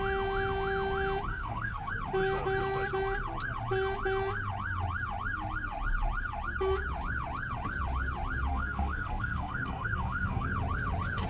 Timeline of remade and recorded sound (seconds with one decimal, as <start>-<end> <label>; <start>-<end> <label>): 0.0-1.3 recorded; 1.3-1.9 remade; 1.9-8.5 recorded; 8.5-10.5 remade; 10.5-11.3 recorded